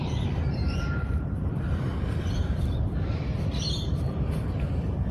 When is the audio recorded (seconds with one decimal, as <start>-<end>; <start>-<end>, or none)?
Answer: 0.8-1.9